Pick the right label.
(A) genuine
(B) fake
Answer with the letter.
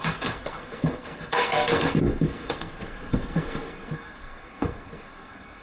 B